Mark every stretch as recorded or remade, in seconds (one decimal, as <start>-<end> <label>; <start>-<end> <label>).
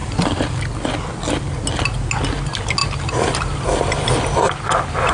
0.0-0.5 remade; 0.5-2.8 recorded; 2.8-4.5 remade; 4.5-5.1 recorded